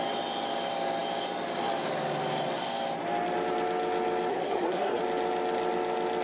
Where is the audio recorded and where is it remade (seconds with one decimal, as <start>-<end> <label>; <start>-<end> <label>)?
0.0-4.3 recorded; 4.3-5.0 remade; 5.0-6.2 recorded